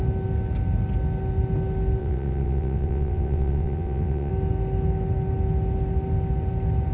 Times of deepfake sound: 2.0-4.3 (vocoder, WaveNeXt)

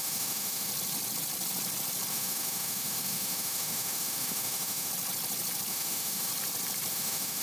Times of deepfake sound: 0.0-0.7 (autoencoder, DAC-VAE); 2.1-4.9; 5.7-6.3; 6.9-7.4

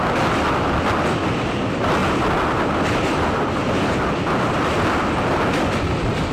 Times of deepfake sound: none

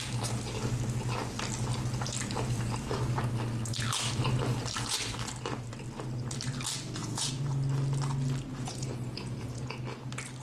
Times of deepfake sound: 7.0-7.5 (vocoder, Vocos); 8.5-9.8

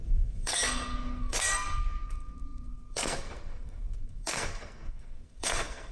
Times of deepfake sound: 0.0-5.9 (codec, SNAC)

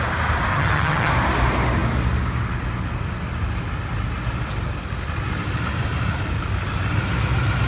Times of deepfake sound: 0.5-1.1 (vocoder, HiFi-GAN)

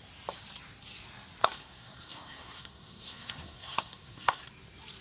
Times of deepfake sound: 1.4-4.4 (codec, SNAC)

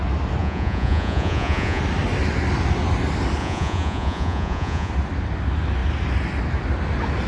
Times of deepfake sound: 0.4-1.8 (vocoder, Vocos); 3.4-4.9